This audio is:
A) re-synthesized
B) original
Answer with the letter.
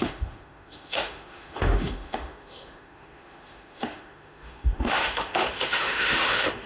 A